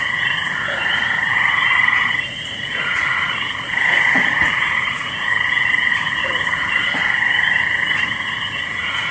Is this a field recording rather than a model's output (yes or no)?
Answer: no